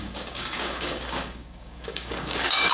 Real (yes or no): no